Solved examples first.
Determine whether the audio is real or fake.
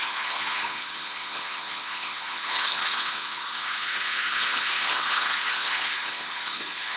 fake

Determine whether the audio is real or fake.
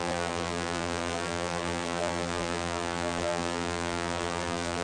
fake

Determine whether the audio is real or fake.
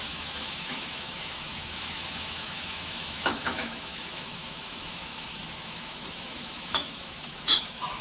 fake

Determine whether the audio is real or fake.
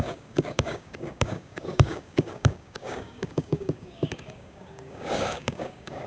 fake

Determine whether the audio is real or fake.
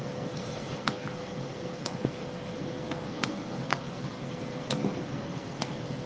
fake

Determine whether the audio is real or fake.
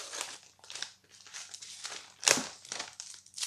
real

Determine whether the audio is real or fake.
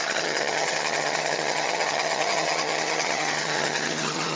fake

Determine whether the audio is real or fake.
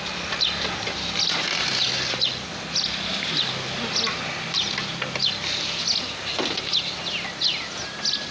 real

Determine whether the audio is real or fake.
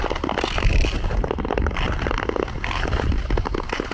real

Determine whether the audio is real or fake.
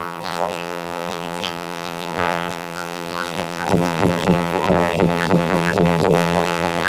fake